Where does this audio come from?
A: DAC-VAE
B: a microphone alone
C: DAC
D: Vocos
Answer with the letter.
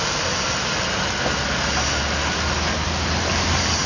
B